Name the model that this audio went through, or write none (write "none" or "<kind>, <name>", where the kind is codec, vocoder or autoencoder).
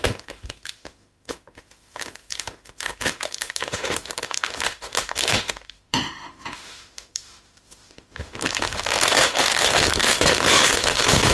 autoencoder, DAC-VAE